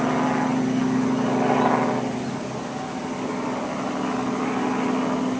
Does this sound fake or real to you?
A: real